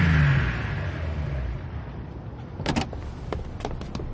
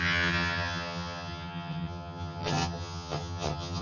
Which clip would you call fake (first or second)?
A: second